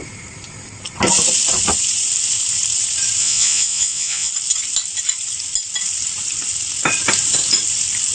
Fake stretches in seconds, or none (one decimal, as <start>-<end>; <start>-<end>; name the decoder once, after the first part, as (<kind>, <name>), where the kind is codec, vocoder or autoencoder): 3.2-4.3 (vocoder, Vocos)